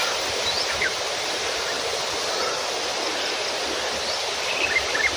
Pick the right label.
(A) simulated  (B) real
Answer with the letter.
B